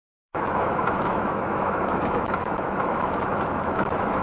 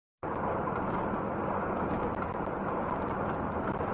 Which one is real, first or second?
second